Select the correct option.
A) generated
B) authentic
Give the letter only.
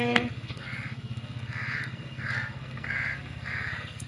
A